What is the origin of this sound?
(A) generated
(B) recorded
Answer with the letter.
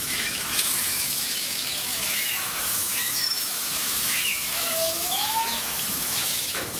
A